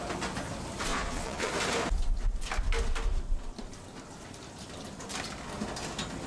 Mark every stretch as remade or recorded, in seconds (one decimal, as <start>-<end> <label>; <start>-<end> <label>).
0.0-0.9 recorded; 0.9-1.5 remade; 1.5-6.3 recorded